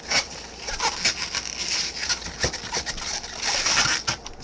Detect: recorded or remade recorded